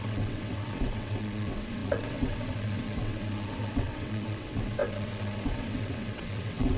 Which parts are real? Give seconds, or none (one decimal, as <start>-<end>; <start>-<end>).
none